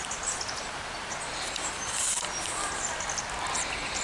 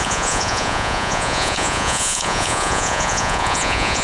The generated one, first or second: second